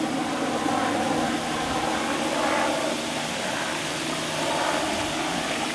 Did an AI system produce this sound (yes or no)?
no